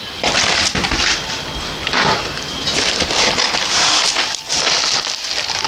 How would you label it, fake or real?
real